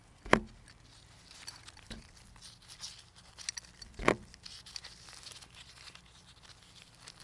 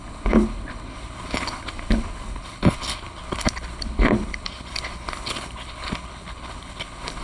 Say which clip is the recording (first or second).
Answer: first